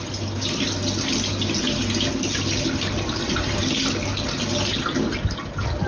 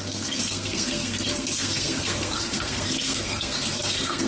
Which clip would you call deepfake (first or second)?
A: second